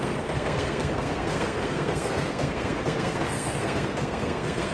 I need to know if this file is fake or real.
fake